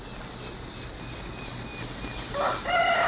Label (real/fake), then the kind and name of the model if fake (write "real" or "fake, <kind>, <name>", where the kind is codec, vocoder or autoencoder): real